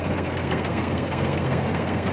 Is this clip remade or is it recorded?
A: remade